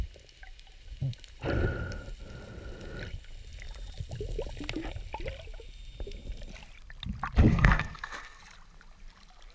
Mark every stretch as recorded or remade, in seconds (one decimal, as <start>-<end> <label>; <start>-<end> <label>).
0.0-7.5 recorded; 7.5-8.4 remade; 8.4-9.5 recorded